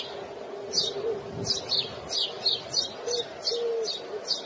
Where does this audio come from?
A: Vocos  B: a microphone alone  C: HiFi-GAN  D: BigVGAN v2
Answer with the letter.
B